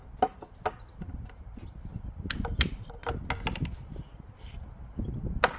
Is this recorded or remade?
recorded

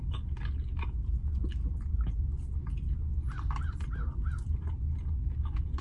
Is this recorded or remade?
recorded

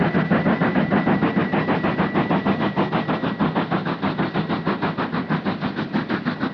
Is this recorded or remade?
recorded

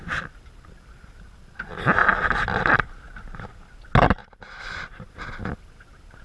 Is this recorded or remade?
recorded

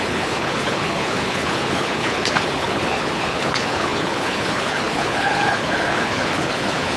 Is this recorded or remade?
remade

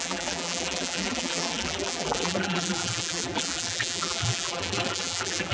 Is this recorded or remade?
remade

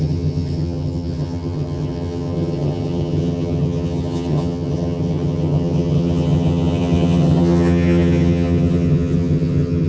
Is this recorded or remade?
remade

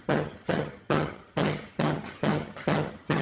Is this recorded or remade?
remade